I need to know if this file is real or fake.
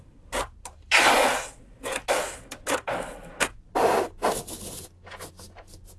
real